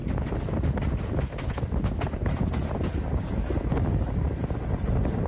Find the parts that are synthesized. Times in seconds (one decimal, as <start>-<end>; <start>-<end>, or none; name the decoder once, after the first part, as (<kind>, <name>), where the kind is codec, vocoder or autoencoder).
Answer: none

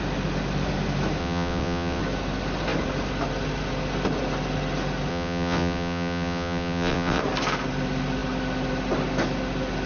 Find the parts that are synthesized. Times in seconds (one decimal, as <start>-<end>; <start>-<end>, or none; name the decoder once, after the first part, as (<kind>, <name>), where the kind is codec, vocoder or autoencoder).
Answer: 1.2-2.0 (vocoder, WaveNeXt); 5.1-7.2

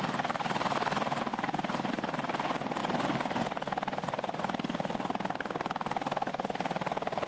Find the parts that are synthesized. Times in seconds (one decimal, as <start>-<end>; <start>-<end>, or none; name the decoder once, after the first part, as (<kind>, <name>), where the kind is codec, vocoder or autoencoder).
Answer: none